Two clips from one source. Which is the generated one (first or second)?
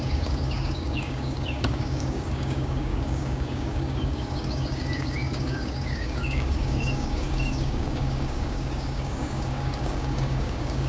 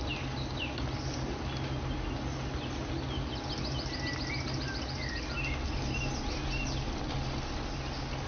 first